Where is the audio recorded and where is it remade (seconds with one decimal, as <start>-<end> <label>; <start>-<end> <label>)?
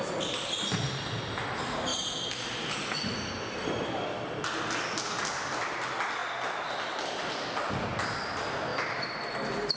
0.0-9.8 recorded